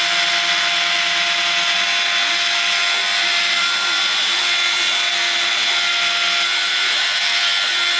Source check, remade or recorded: recorded